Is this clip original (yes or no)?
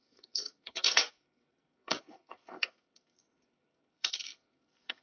no